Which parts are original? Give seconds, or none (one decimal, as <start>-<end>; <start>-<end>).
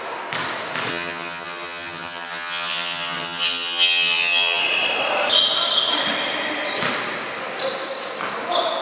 0.0-0.9; 4.6-8.8